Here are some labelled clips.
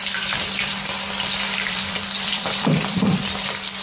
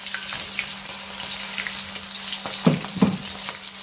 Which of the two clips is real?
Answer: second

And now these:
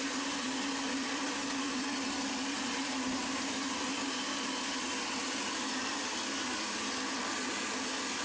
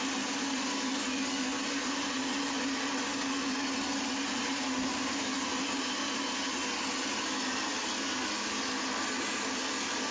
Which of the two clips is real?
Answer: second